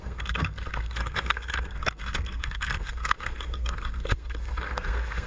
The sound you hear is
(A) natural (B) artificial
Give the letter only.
B